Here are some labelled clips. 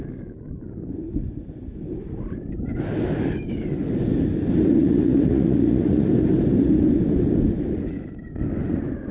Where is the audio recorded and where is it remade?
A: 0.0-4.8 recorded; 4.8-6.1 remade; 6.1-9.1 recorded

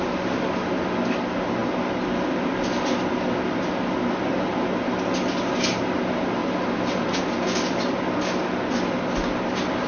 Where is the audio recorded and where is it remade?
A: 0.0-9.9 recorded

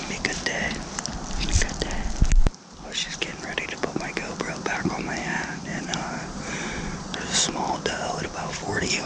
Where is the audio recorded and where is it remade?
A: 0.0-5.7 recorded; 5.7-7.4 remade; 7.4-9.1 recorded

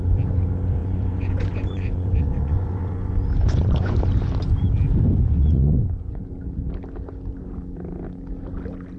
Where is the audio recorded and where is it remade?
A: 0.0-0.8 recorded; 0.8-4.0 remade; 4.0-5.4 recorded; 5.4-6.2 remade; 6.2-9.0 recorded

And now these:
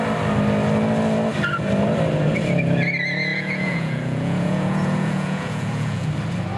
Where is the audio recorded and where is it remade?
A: 0.0-3.3 recorded; 3.3-6.1 remade; 6.1-6.6 recorded

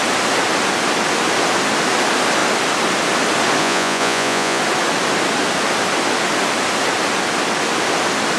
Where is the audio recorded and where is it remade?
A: 0.0-3.6 recorded; 3.6-4.6 remade; 4.6-8.4 recorded

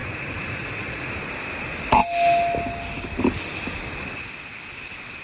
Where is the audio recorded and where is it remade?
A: 0.0-1.1 remade; 1.1-5.2 recorded